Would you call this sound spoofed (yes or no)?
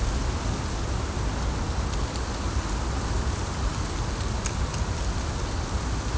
no